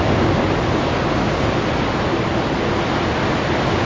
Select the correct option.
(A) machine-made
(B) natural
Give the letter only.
B